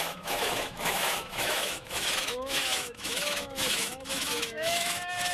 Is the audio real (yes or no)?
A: no